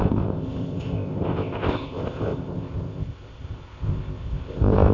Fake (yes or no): yes